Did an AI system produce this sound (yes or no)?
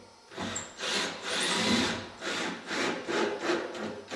no